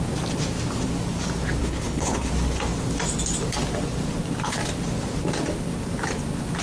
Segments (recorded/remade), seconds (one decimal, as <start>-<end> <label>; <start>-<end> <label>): 0.0-1.6 recorded; 1.6-2.3 remade; 2.3-6.6 recorded